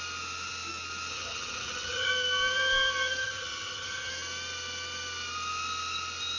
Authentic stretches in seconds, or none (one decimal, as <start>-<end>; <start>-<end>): 0.0-1.1; 2.1-3.2; 4.1-6.4